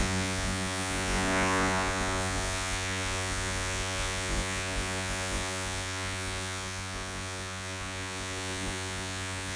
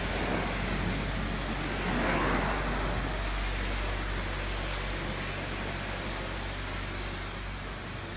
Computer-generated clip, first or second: first